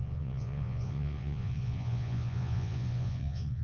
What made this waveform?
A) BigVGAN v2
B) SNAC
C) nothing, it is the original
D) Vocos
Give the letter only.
D